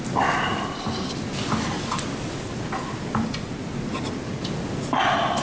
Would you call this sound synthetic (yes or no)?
no